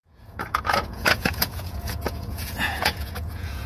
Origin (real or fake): fake